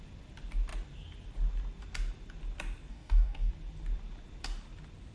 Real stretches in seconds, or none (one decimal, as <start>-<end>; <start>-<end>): 0.0-2.9; 3.5-5.1